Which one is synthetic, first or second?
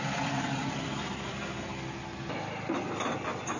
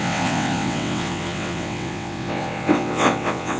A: second